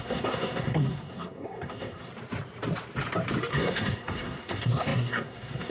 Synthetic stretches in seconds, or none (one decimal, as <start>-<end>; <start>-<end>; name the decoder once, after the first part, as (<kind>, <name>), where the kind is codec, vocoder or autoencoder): 0.0-2.1 (codec, SNAC); 3.5-5.7